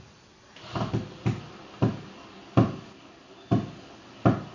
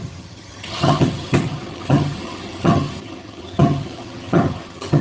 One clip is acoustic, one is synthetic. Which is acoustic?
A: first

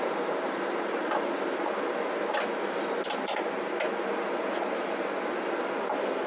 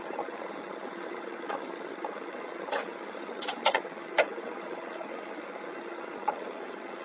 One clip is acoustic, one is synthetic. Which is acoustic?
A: first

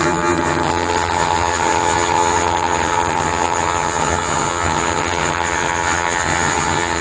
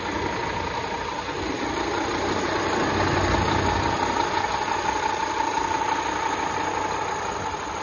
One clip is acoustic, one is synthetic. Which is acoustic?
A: second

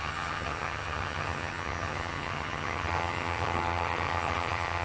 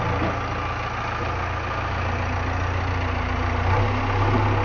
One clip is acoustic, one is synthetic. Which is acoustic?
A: second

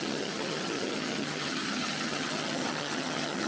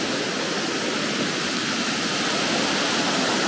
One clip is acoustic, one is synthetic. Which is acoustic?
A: second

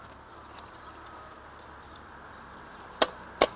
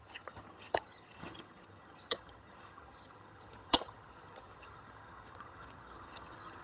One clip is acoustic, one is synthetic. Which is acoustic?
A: first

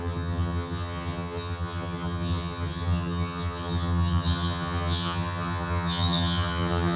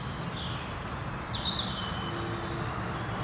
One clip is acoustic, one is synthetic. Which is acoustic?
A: second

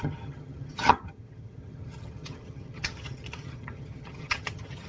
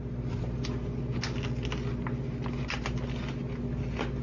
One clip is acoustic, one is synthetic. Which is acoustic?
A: second